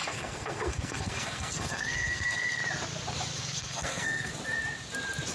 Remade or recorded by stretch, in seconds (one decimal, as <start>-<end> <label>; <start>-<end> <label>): 0.0-2.6 remade; 2.6-3.4 recorded; 3.4-4.3 remade; 4.3-5.3 recorded